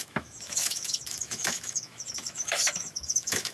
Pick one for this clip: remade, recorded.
remade